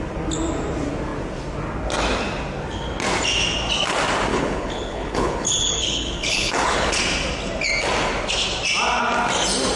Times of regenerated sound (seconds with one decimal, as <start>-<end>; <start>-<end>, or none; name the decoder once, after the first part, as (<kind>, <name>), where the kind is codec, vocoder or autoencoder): 4.3-7.0 (codec, HILCodec)